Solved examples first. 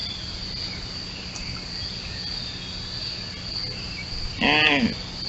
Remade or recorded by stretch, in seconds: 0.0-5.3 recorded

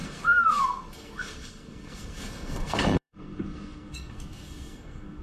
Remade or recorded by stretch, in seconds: 0.0-5.2 remade

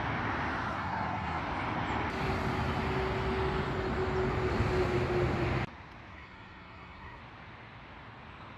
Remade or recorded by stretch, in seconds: 0.0-0.7 recorded; 0.7-1.4 remade; 1.4-6.1 recorded; 6.1-7.2 remade; 7.2-8.6 recorded

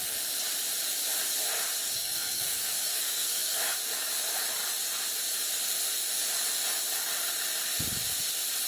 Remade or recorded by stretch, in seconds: 0.0-1.8 recorded; 1.8-3.6 remade; 3.6-8.7 recorded

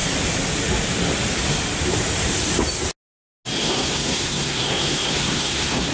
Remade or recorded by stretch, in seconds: 0.0-3.6 recorded; 3.6-5.9 remade

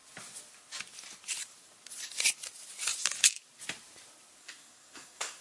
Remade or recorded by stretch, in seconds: 0.0-4.4 recorded; 4.4-5.4 remade

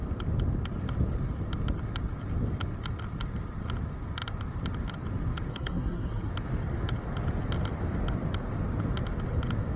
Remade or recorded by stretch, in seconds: 0.0-5.5 recorded; 5.5-6.3 remade; 6.3-9.8 recorded

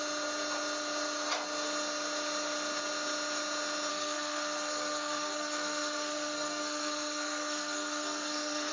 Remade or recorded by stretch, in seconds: 0.0-3.9 recorded; 3.9-8.7 remade